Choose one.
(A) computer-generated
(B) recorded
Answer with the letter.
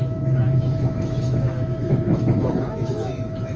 A